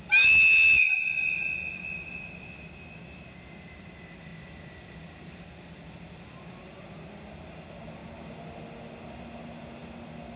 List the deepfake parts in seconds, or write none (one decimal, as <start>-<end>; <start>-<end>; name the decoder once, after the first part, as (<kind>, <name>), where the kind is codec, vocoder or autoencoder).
none